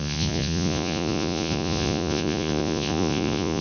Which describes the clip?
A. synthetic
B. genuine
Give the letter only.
A